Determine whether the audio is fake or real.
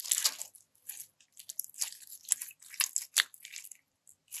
real